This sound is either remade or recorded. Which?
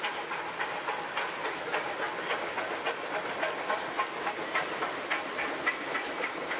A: recorded